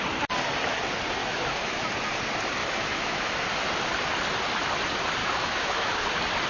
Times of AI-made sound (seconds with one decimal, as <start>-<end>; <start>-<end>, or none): 1.2-1.9; 2.6-3.3; 5.2-6.0